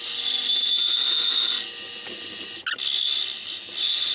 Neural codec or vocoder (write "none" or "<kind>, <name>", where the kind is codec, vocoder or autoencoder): none